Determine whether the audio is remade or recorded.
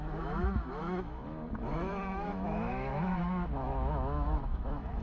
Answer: remade